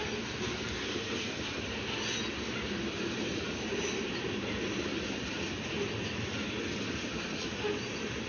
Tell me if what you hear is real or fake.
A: real